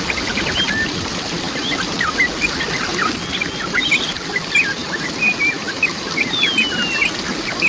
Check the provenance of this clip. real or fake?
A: real